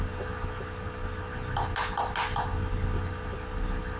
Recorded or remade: recorded